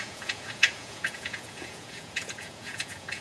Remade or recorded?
remade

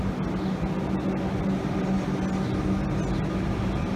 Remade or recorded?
recorded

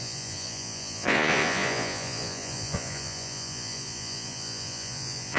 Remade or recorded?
remade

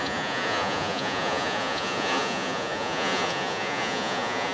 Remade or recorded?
remade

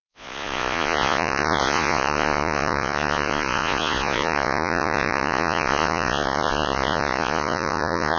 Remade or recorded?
remade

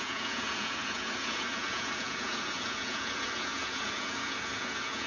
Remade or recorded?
remade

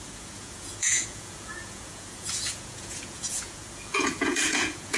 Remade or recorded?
remade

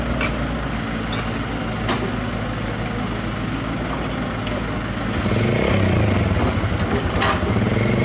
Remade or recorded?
recorded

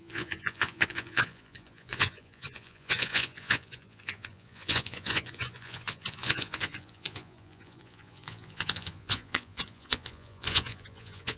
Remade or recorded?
remade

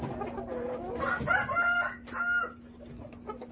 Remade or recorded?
recorded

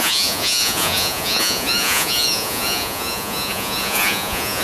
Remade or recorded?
remade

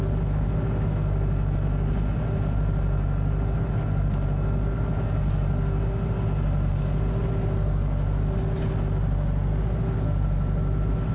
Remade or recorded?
recorded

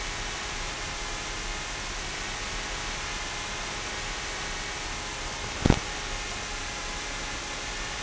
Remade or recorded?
recorded